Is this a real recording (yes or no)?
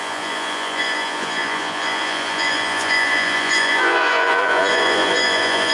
no